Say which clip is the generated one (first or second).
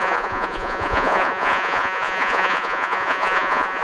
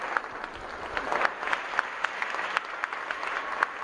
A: first